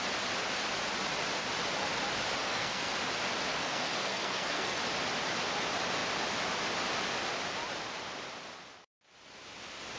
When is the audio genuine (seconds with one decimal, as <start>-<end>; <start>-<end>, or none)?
0.0-2.4; 2.9-3.5; 4.8-10.0

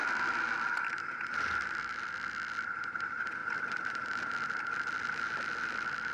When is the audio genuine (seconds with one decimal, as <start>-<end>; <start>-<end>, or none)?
0.0-6.1